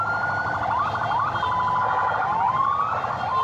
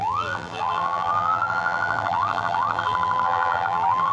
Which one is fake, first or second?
second